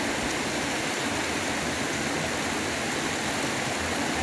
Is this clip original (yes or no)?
yes